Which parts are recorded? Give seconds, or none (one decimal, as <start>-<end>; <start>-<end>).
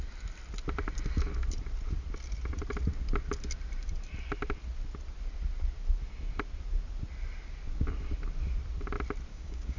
0.0-9.3